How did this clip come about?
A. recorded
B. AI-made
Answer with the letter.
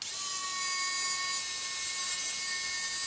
A